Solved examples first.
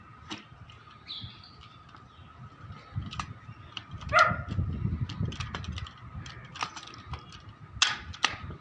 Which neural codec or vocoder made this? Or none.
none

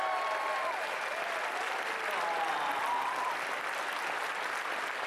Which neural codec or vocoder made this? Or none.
none